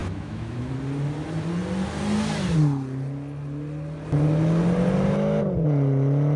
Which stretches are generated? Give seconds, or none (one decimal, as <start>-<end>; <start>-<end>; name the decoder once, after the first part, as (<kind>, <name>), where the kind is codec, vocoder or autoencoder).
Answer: 0.0-0.7 (autoencoder, DAC-VAE)